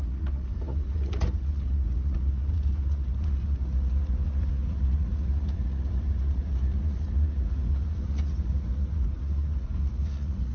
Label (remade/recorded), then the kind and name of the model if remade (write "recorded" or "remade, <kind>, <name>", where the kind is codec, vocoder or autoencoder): remade, vocoder, Vocos